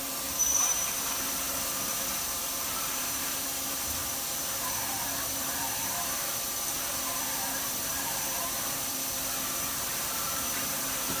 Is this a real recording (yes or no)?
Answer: no